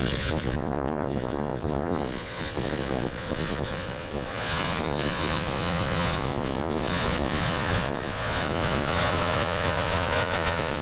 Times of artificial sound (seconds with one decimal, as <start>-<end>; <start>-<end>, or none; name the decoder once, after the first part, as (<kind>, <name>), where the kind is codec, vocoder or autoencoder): 0.0-10.8 (vocoder, Vocos)